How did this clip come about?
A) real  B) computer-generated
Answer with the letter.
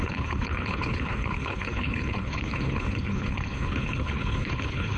B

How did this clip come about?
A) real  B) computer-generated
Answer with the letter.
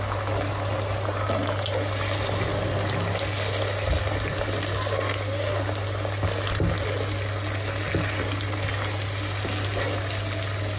A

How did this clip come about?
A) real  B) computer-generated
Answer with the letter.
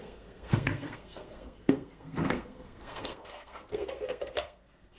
B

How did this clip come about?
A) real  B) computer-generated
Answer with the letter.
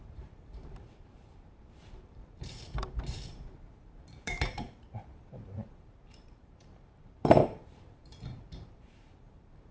B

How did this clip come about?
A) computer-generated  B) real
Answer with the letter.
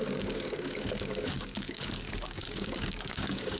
A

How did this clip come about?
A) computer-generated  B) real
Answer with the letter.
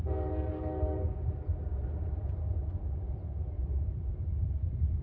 A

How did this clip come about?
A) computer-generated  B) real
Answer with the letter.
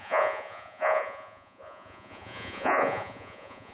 A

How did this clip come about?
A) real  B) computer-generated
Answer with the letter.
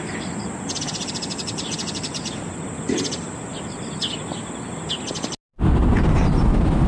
A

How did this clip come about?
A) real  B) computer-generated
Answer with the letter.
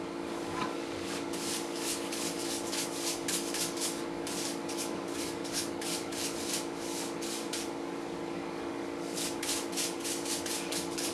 B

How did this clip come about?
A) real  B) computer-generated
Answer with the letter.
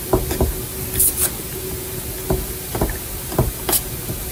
A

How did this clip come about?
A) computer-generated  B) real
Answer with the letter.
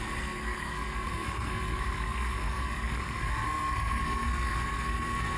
A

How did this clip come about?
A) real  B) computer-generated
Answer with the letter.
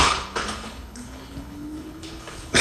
B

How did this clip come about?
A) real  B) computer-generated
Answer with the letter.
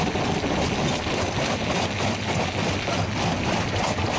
A